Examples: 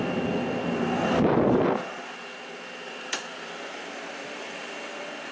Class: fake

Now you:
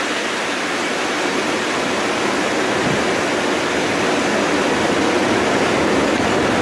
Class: real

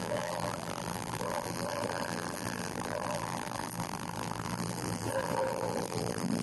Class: fake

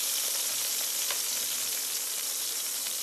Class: fake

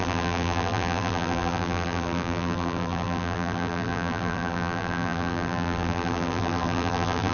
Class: fake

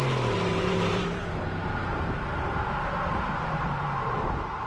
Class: fake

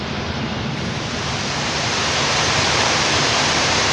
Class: fake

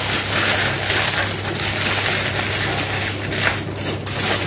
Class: real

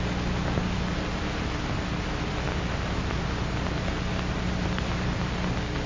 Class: real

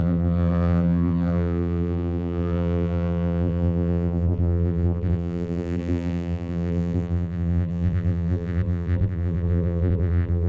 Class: fake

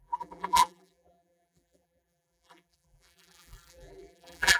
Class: fake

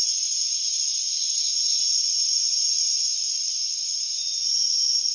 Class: fake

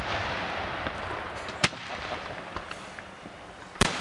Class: fake